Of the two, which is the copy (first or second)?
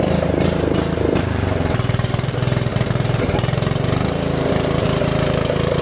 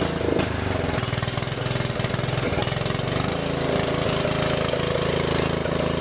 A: first